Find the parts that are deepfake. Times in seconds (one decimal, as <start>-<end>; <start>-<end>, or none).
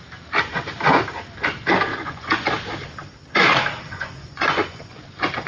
1.9-2.5; 3.9-5.5